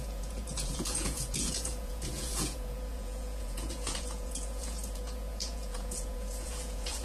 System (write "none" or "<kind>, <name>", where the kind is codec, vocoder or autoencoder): vocoder, Vocos